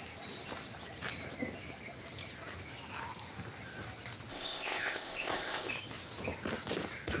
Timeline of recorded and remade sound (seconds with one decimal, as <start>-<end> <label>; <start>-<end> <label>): 0.0-4.3 recorded; 4.3-5.7 remade; 5.7-7.2 recorded